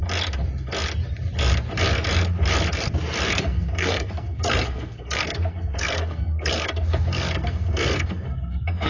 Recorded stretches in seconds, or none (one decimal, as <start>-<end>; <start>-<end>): 0.0-3.4